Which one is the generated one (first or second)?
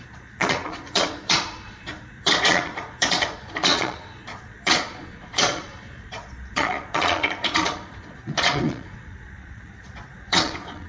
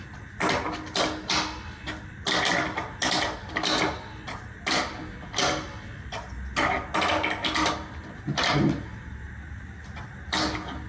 first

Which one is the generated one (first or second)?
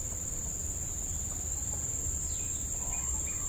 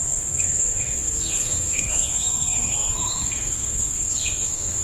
second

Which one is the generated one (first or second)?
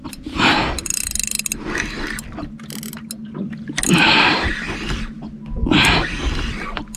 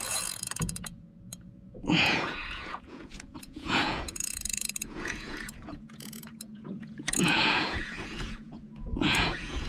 second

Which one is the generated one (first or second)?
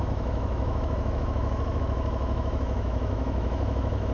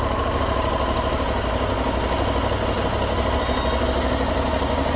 first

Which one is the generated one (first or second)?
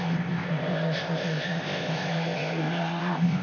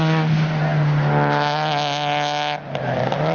first